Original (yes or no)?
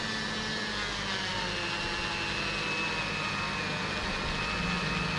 yes